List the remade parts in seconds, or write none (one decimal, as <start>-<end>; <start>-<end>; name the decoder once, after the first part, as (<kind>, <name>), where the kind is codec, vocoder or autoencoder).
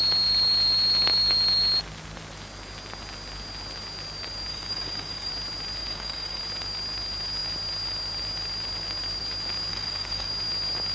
4.5-5.3 (codec, DAC); 5.8-6.4; 9.7-10.3